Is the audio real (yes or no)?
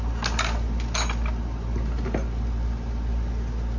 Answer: yes